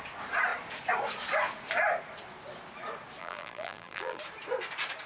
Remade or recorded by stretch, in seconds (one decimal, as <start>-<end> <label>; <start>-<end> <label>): 0.0-3.2 recorded; 3.2-4.2 remade; 4.2-5.1 recorded